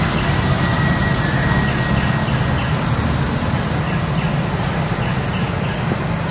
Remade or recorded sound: recorded